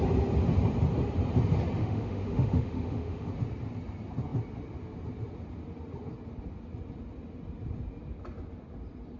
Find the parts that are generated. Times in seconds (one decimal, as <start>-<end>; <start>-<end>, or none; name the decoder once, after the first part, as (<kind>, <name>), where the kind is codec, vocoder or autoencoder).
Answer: 1.8-3.3 (autoencoder, DAC-VAE)